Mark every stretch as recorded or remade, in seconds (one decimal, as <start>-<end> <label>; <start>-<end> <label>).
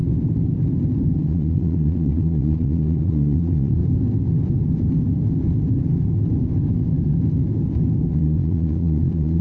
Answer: 0.0-1.2 recorded; 1.2-3.8 remade; 3.8-8.1 recorded; 8.1-9.4 remade